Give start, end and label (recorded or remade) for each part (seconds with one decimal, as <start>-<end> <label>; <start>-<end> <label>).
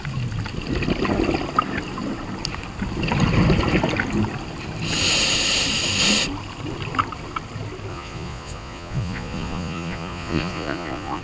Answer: 0.0-7.9 recorded; 7.9-11.2 remade